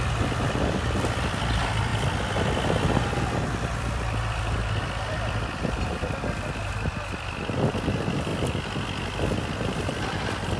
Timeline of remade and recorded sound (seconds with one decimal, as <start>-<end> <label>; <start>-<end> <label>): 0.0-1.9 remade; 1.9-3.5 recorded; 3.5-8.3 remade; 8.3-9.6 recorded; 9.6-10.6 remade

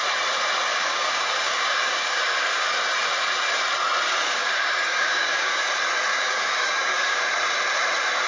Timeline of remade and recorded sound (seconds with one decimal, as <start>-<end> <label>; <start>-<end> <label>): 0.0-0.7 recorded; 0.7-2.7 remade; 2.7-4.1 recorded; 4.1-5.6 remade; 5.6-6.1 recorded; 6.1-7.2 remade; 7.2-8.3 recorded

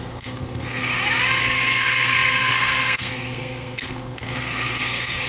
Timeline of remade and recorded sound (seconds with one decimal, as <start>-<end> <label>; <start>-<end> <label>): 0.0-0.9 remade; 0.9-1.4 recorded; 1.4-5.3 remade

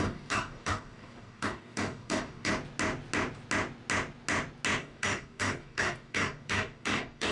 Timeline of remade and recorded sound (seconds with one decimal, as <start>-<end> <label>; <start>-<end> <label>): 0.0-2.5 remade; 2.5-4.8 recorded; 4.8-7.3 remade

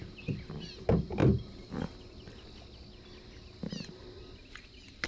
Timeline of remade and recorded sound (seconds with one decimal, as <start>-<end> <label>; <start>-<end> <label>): 0.0-5.1 recorded